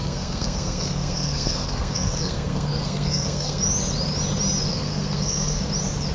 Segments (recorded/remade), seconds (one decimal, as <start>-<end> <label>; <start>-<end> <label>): 0.0-3.6 remade; 3.6-4.7 recorded; 4.7-5.6 remade; 5.6-6.1 recorded